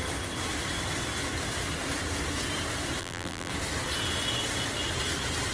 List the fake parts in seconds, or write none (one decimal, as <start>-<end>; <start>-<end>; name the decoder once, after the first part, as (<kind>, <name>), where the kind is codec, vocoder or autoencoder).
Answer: 3.0-3.5 (vocoder, BigVGAN v2)